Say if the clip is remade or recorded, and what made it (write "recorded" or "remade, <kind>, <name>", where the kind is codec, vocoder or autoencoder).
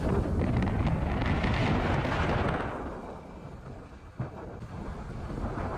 recorded